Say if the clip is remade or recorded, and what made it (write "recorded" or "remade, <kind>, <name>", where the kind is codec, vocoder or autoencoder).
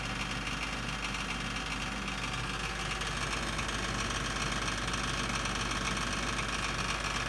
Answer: recorded